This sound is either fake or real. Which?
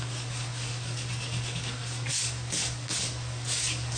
fake